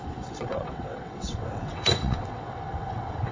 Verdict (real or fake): fake